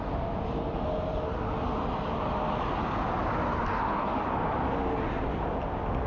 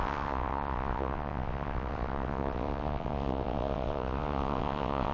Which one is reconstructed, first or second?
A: second